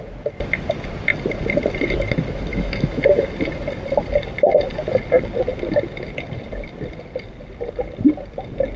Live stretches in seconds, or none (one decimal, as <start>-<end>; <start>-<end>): 0.0-2.5; 3.3-8.8